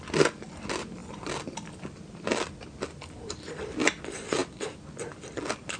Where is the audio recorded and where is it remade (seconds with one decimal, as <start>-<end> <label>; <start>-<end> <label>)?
0.0-5.8 recorded